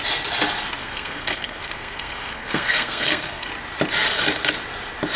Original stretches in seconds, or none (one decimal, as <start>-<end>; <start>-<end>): 0.0-0.8; 3.5-5.2